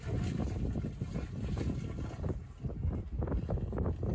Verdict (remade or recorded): recorded